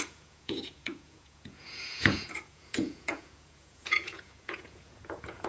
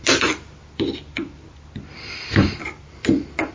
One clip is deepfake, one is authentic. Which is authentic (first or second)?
second